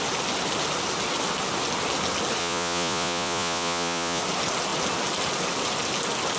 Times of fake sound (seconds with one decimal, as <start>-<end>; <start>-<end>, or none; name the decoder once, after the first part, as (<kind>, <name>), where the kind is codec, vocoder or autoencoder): 2.4-4.2 (vocoder, Vocos)